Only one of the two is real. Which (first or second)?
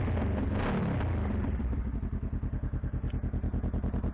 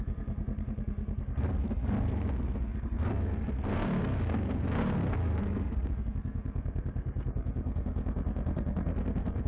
first